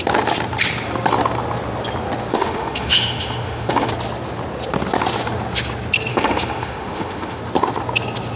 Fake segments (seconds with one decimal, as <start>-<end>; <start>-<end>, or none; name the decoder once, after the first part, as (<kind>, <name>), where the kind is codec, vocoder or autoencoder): 2.3-3.9 (autoencoder, DAC-VAE); 6.1-7.4

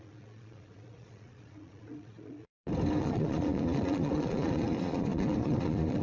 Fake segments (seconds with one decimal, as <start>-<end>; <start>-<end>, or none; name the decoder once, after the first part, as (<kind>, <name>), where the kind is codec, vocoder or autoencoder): 0.0-2.5 (vocoder, Vocos); 3.0-6.0

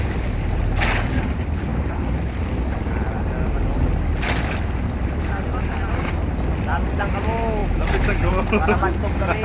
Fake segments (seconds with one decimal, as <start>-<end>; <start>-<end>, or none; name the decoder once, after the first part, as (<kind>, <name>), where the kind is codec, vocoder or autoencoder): none

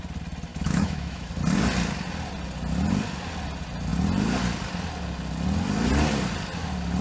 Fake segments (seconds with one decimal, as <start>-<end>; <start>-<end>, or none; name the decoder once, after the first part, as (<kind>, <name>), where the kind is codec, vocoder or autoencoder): 0.5-1.3 (autoencoder, DAC-VAE)